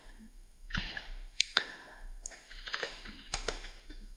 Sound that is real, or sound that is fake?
fake